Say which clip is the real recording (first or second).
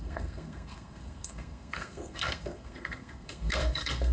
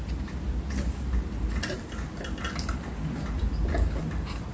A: second